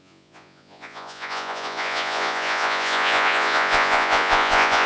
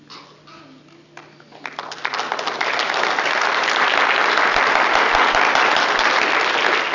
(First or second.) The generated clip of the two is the first